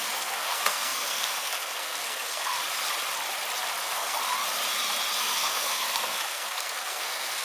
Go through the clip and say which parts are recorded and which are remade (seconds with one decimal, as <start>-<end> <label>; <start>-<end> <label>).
0.0-2.6 remade; 2.6-3.8 recorded; 3.8-4.2 remade; 4.2-5.2 recorded; 5.2-7.4 remade